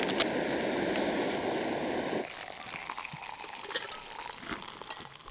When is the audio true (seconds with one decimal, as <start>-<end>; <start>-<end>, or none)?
0.0-5.3